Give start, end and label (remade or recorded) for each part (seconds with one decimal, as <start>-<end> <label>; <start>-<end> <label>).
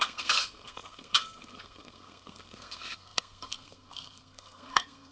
0.0-5.1 remade